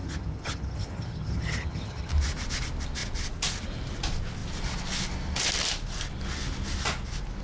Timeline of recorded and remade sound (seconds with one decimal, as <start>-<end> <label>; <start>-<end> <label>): 0.0-2.1 remade; 2.1-7.4 recorded